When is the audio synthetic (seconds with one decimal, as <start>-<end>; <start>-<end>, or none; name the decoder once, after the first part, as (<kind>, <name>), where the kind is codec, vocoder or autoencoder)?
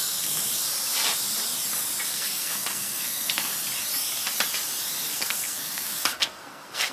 0.0-0.4 (codec, SNAC); 2.1-3.5; 5.1-6.9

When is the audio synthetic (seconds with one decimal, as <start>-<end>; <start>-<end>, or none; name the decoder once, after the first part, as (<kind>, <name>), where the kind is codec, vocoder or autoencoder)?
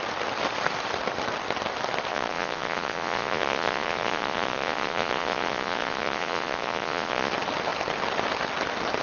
2.1-7.3 (vocoder, Vocos)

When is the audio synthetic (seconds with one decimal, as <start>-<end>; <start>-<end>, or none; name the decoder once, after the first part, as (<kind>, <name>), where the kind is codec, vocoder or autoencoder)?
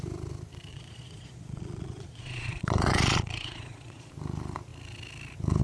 0.7-4.1 (vocoder, Vocos)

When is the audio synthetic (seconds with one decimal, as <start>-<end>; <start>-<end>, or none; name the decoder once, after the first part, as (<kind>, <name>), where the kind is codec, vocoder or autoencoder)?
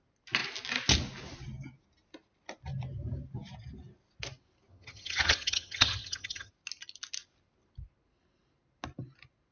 4.7-6.5 (vocoder, HiFi-GAN)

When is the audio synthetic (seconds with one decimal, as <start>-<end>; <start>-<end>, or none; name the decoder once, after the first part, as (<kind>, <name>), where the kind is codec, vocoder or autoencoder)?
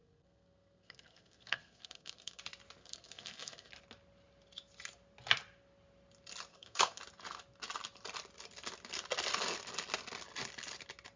0.0-2.4 (codec, SNAC); 2.8-3.7; 6.5-7.0